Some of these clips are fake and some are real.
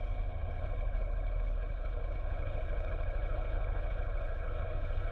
fake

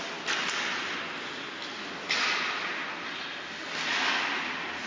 real